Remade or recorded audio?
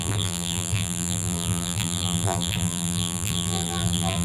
remade